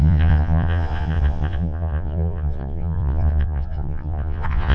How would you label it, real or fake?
fake